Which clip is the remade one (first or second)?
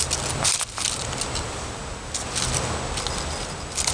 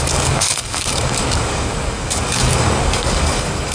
second